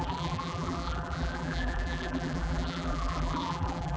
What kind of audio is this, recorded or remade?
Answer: remade